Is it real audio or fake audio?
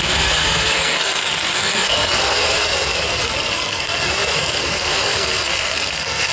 fake